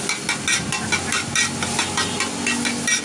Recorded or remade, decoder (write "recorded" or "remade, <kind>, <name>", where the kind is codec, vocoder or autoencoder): recorded